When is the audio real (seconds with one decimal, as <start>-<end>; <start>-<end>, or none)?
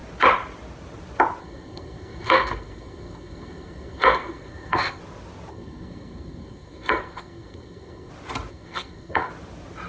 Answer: 0.0-1.4; 5.0-5.5; 8.1-8.5; 9.3-9.9